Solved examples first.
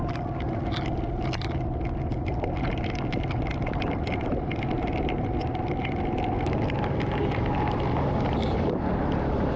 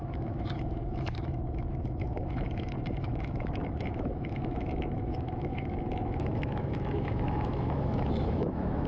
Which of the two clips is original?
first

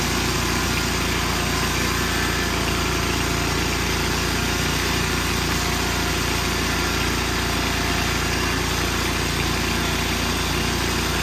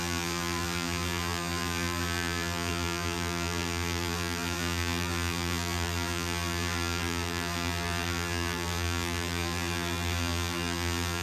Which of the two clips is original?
first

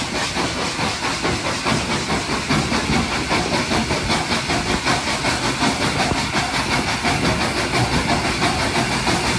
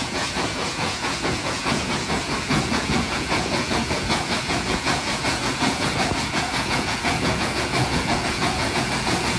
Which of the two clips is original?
first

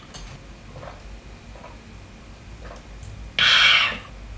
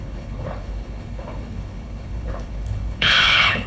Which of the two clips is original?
first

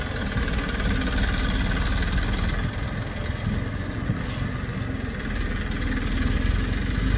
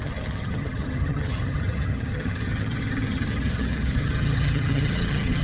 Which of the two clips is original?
first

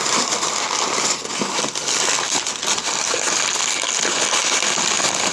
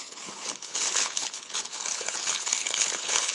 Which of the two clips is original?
first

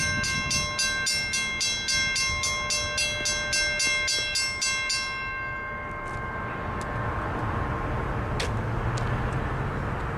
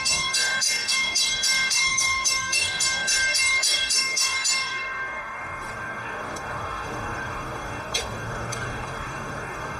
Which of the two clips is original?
first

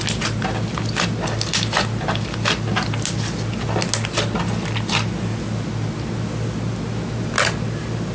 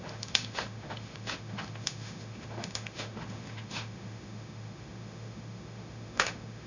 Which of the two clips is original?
first